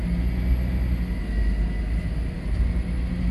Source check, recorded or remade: recorded